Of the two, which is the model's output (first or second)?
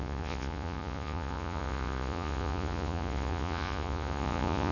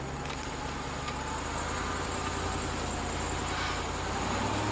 first